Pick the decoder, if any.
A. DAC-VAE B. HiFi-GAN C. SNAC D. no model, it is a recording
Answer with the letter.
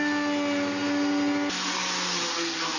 D